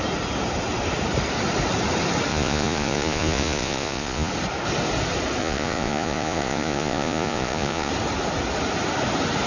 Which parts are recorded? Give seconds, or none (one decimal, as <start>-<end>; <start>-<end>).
0.0-2.3; 4.3-5.4; 7.9-9.5